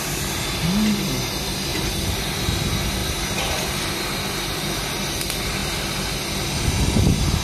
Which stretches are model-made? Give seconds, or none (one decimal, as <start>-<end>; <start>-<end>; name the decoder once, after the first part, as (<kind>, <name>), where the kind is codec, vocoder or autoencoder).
1.7-2.5 (vocoder, BigVGAN v2); 3.0-4.9